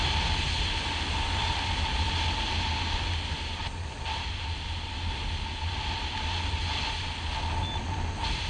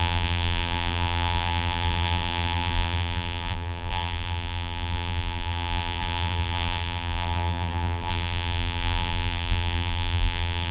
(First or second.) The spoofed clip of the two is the second